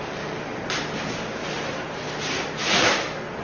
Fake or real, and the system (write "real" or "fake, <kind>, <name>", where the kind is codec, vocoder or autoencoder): real